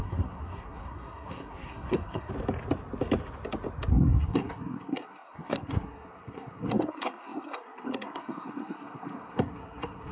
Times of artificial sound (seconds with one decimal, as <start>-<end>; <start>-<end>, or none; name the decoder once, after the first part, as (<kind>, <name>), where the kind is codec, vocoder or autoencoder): 0.0-2.3 (codec, SNAC); 3.9-10.1